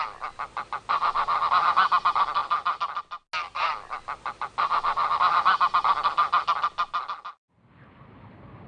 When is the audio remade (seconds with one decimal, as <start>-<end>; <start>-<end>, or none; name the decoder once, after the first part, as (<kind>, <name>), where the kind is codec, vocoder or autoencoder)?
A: none